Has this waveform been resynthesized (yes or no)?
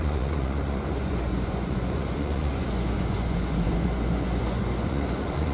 yes